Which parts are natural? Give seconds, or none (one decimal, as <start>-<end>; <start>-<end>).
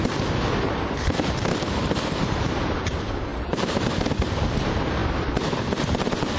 0.0-1.0